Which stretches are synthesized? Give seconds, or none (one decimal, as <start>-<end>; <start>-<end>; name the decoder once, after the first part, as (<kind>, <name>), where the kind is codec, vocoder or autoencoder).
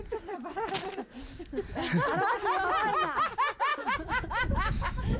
3.7-5.2 (autoencoder, DAC-VAE)